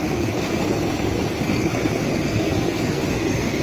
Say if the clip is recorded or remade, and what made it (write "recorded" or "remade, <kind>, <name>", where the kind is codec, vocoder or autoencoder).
remade, codec, SNAC